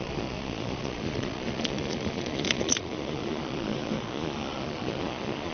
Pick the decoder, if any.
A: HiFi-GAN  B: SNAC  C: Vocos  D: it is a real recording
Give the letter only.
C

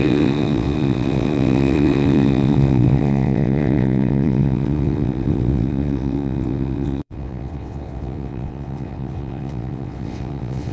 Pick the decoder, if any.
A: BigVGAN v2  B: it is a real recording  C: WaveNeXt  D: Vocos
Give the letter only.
C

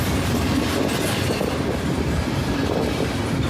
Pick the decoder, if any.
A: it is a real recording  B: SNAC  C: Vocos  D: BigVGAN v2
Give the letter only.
A